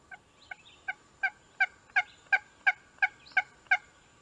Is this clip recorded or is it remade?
recorded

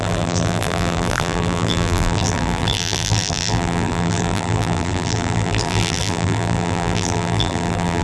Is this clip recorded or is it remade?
remade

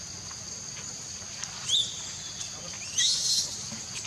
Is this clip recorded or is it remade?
recorded